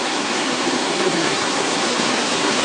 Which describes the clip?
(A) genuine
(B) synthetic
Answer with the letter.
B